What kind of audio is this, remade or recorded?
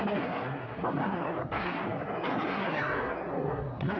remade